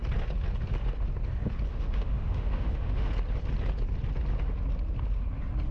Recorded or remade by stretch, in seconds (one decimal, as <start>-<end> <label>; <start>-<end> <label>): 0.0-1.7 recorded; 1.7-3.1 remade; 3.1-5.7 recorded